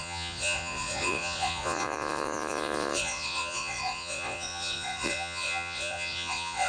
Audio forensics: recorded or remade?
remade